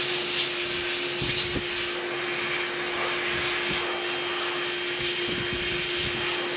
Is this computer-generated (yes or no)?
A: no